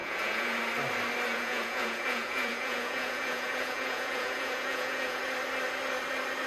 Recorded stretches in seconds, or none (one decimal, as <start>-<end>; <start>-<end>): 0.6-1.3; 5.2-6.5